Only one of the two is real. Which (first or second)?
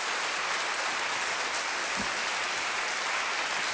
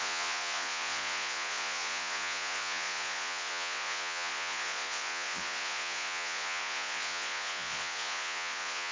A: first